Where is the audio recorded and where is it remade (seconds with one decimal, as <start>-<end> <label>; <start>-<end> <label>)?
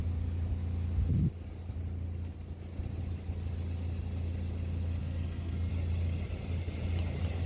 0.0-5.0 recorded; 5.0-5.7 remade; 5.7-7.5 recorded